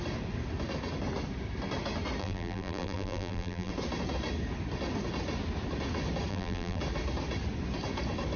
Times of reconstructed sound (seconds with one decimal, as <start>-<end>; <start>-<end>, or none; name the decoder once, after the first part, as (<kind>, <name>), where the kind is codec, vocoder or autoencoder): 2.2-3.7 (vocoder, BigVGAN v2); 6.3-6.8